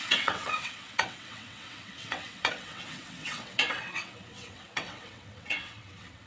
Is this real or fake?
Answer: fake